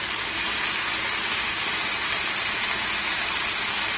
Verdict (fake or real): real